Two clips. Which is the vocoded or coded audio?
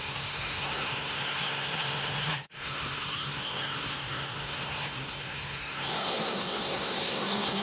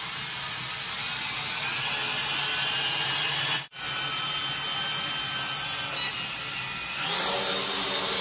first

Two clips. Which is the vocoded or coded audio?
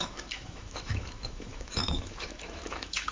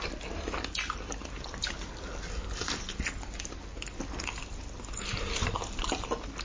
first